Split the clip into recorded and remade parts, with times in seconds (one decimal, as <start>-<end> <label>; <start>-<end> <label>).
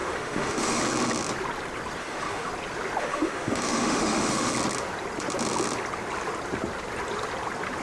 0.0-0.8 remade; 0.8-2.0 recorded; 2.0-2.5 remade; 2.5-3.0 recorded; 3.0-4.5 remade; 4.5-7.8 recorded